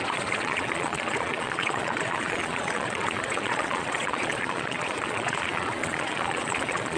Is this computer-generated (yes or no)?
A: yes